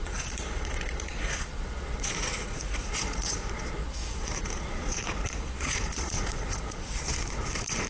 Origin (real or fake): fake